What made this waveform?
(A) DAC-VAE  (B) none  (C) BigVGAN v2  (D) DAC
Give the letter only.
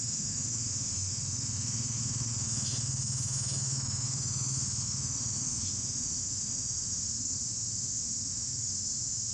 A